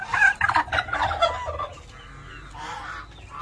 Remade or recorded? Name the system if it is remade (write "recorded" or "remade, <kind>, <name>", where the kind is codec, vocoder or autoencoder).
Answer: recorded